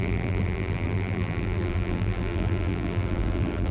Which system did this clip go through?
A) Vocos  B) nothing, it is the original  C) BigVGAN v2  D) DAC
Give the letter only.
C